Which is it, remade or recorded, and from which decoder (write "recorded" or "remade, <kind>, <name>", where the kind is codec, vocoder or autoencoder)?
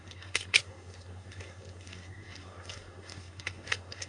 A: remade, codec, SNAC